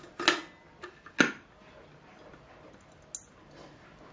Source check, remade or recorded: recorded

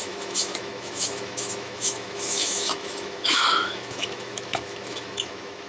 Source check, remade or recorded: remade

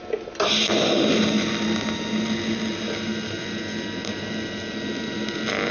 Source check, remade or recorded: recorded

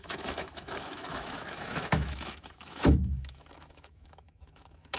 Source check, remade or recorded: remade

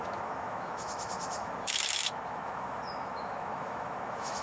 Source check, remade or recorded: remade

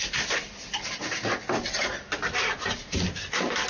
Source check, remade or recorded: recorded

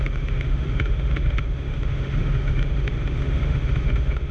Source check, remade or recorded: remade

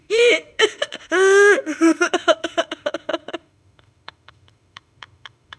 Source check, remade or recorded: remade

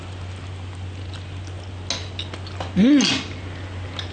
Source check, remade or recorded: recorded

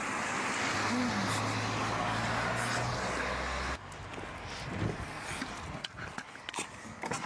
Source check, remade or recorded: recorded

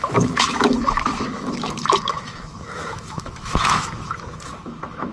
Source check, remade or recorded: remade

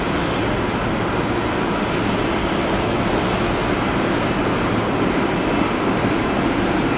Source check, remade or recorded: recorded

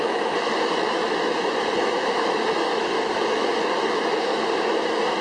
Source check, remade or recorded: remade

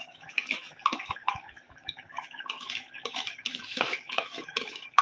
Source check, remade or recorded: remade